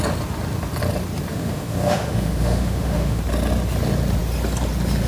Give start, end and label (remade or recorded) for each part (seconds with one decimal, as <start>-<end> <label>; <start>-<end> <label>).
0.0-1.3 recorded; 1.3-3.2 remade; 3.2-5.1 recorded